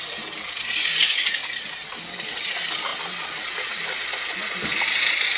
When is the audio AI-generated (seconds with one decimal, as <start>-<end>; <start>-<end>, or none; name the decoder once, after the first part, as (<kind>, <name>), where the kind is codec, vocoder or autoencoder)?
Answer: none